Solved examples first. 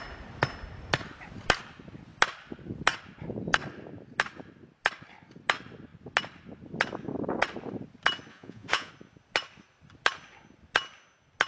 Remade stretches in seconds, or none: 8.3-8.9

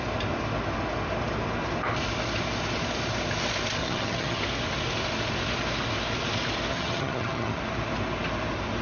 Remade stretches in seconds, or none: 3.8-4.4; 6.7-7.6

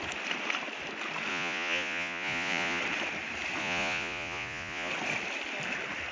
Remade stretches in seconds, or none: 1.3-2.8; 3.6-4.9

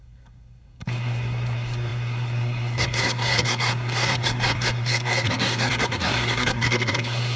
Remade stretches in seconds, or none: 0.0-7.4

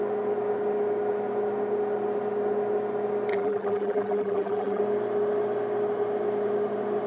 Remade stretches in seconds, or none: 3.3-4.8

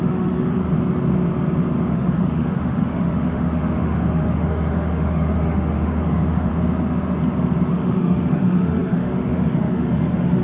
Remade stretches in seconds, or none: 0.0-0.6; 1.9-6.5; 7.7-10.4

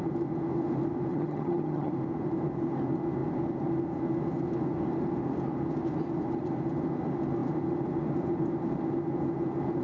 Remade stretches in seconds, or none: 1.1-1.9